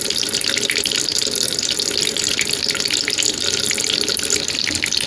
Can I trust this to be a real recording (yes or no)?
yes